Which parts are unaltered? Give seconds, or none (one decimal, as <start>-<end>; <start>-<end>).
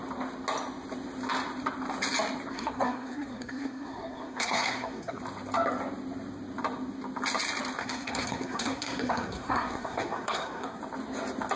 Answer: 0.0-2.5; 5.2-7.8; 10.8-11.6